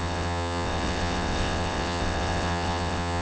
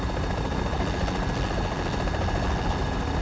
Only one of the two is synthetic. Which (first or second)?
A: first